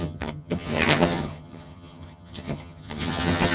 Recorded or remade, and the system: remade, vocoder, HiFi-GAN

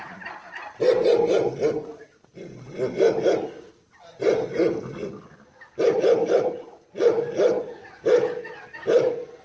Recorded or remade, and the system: recorded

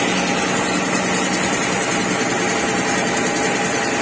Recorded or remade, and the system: recorded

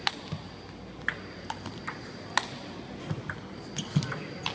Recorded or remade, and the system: recorded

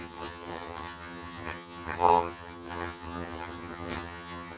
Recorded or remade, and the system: remade, vocoder, HiFi-GAN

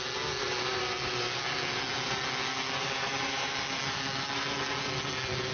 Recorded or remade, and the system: recorded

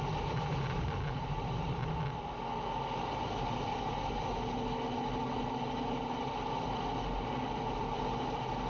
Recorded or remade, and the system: recorded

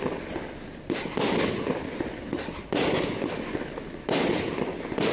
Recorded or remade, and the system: recorded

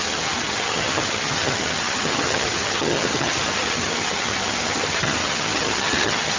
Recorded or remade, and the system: remade, vocoder, HiFi-GAN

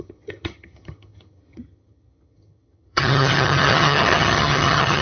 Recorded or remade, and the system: remade, vocoder, HiFi-GAN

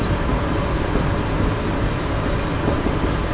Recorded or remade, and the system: recorded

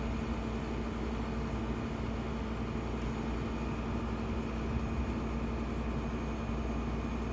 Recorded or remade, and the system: recorded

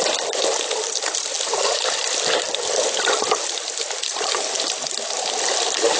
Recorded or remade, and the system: recorded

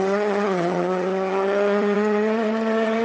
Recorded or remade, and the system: remade, vocoder, HiFi-GAN